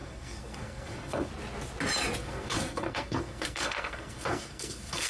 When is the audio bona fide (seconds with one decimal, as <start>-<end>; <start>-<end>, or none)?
1.3-2.2